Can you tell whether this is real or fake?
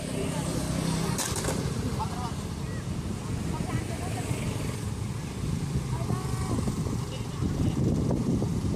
real